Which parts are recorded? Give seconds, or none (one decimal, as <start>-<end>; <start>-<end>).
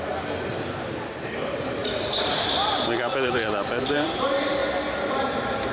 4.6-5.1